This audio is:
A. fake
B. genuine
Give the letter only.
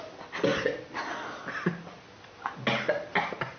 B